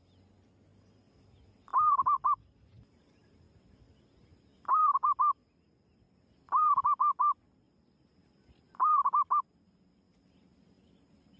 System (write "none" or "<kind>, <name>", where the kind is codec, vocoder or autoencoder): none